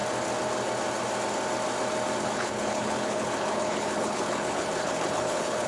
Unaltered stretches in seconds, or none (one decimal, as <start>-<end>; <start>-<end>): 0.0-2.2

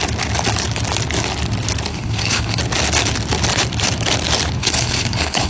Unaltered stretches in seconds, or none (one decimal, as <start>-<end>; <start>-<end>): 0.0-1.9; 2.6-4.6

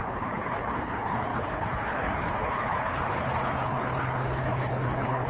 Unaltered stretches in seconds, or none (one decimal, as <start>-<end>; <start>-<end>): none

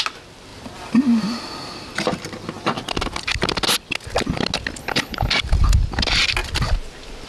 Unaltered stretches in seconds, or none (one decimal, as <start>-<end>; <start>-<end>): 0.0-4.8; 5.3-7.3

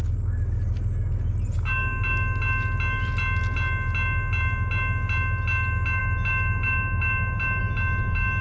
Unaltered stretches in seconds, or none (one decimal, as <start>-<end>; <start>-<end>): 0.0-8.4

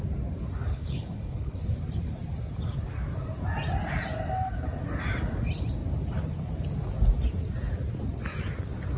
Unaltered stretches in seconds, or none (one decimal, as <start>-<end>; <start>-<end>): 0.0-0.7; 1.6-9.0

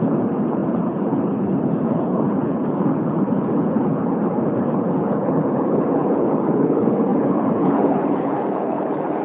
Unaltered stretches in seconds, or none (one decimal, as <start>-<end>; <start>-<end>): none